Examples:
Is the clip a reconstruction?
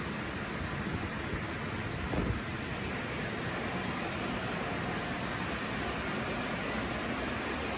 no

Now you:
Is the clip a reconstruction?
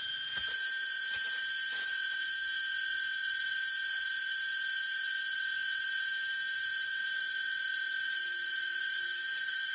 no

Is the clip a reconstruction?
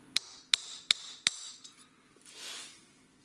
no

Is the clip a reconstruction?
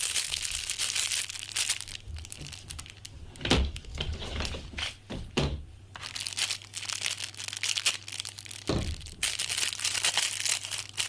no